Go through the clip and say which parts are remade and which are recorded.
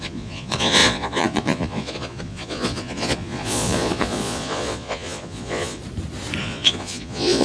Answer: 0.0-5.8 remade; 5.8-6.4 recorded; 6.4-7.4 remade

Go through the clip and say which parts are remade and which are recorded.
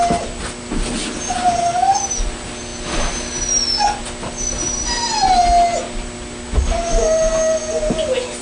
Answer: 0.0-8.4 recorded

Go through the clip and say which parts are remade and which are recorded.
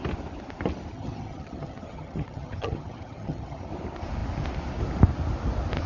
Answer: 0.0-0.9 recorded; 0.9-3.7 remade; 3.7-5.9 recorded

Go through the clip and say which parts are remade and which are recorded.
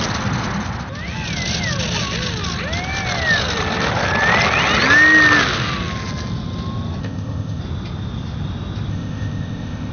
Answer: 0.0-7.0 recorded; 7.0-7.6 remade; 7.6-8.9 recorded; 8.9-9.9 remade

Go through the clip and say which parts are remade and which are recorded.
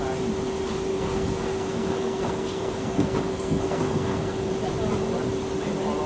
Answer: 0.0-0.9 recorded; 0.9-4.5 remade; 4.5-6.1 recorded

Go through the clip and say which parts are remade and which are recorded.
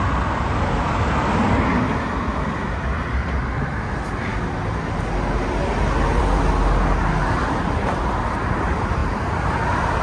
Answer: 0.0-10.0 recorded